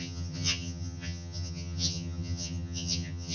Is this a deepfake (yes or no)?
yes